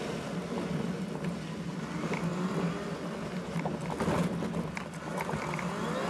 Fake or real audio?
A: real